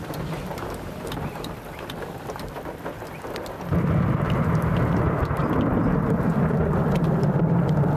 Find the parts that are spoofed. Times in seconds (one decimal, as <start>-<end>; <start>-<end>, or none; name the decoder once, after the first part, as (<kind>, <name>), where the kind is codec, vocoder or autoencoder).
none